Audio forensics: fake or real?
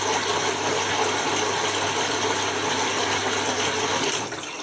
real